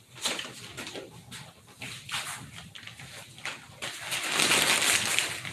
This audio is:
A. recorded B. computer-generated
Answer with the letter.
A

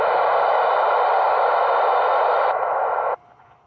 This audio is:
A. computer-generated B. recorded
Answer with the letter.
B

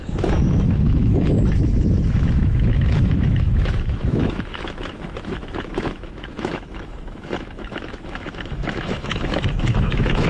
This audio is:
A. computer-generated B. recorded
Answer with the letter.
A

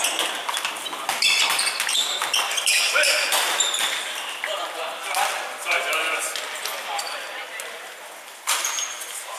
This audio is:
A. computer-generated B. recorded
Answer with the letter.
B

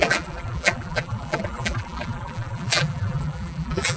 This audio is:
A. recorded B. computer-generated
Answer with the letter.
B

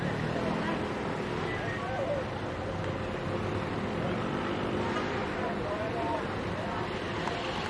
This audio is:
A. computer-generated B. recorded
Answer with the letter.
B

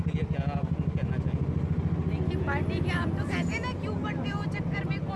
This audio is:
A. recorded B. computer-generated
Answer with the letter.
A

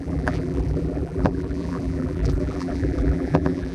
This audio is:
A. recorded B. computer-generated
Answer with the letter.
B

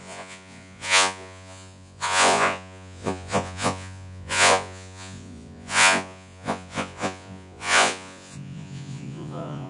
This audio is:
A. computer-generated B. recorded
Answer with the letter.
A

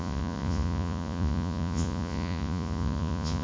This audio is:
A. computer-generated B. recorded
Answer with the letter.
A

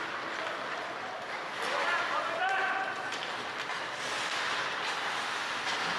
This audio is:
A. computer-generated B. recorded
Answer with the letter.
B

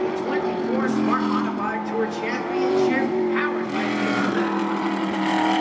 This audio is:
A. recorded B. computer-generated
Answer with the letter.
A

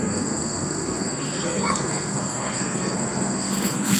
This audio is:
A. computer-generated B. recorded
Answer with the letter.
A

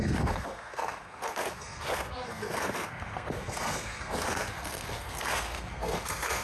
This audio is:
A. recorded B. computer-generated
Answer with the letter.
B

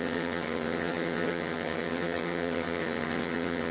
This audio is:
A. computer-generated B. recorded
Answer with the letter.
A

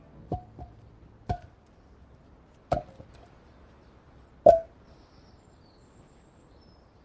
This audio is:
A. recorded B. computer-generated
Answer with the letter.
A